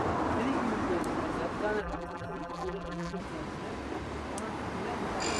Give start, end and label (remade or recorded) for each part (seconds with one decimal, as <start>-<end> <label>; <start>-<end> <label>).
0.0-1.8 recorded; 1.8-3.2 remade; 3.2-5.4 recorded